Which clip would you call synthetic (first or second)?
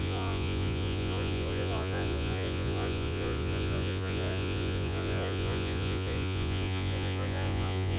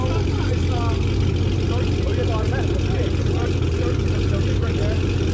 first